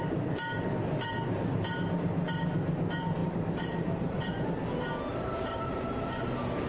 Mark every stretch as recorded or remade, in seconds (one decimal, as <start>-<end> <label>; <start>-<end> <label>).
0.0-3.2 recorded; 3.2-4.4 remade; 4.4-5.1 recorded; 5.1-6.2 remade; 6.2-6.7 recorded